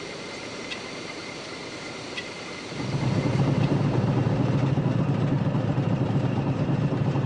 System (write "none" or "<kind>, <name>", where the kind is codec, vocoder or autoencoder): vocoder, BigVGAN v2